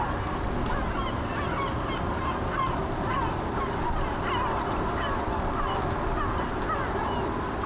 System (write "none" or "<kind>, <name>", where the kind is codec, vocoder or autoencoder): none